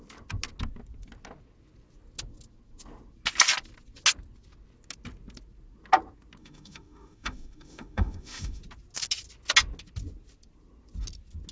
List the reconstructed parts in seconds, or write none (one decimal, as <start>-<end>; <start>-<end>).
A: 6.4-8.6